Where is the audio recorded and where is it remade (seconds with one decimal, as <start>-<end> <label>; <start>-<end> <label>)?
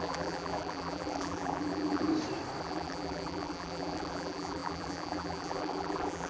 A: 0.0-2.1 remade; 2.1-2.6 recorded; 2.6-6.3 remade